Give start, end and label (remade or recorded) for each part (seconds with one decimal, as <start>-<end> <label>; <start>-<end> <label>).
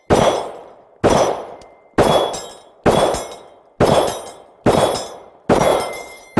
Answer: 0.0-5.7 recorded; 5.7-6.4 remade